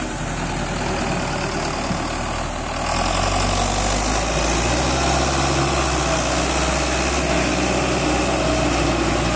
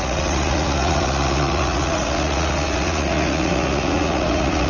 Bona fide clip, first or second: first